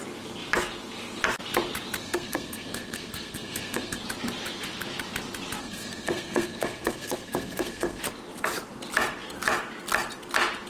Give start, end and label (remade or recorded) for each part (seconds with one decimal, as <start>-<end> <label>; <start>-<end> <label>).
0.0-2.0 recorded; 2.0-4.0 remade; 4.0-5.6 recorded; 5.6-8.0 remade; 8.0-10.7 recorded

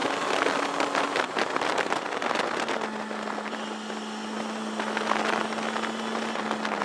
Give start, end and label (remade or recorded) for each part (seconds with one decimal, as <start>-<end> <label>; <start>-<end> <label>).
0.0-6.8 recorded